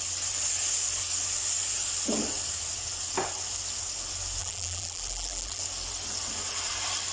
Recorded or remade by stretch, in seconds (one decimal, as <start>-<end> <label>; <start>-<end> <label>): 0.0-4.4 recorded; 4.4-5.6 remade; 5.6-7.1 recorded